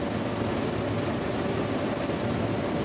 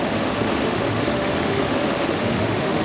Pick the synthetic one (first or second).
second